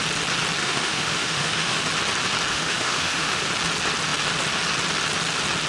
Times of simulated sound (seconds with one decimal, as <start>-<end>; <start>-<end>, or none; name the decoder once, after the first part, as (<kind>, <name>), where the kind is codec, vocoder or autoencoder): 0.6-1.8 (autoencoder, DAC-VAE); 2.5-3.4